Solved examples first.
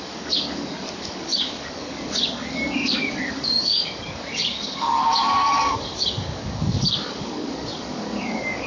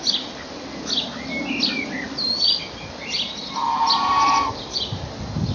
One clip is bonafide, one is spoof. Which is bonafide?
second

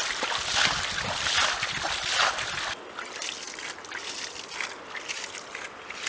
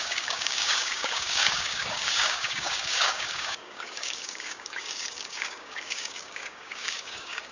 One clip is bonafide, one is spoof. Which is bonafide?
first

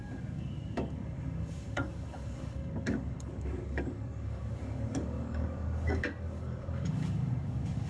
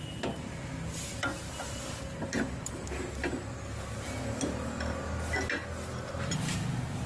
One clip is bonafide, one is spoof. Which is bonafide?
second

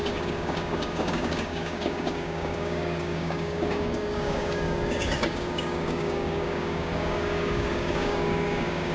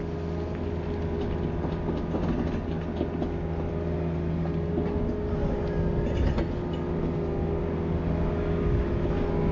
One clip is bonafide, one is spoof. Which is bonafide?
second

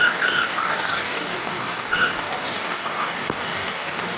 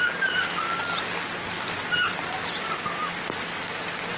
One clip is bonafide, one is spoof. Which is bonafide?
second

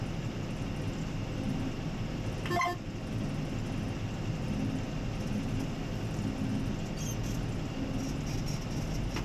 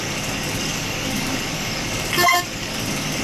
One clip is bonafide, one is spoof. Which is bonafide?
first